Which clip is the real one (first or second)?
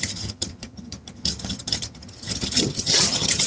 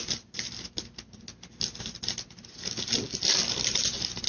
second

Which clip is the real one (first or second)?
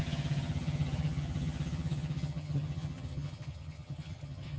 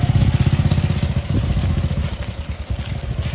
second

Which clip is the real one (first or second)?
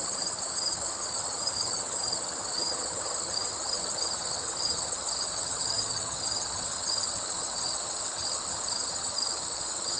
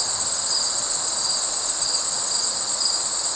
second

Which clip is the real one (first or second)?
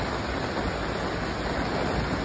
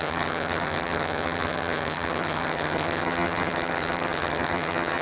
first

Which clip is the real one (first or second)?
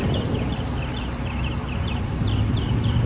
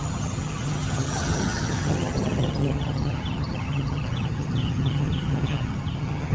first